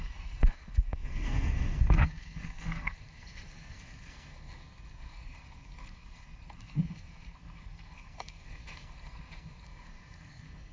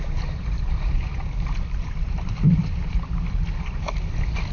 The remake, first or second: first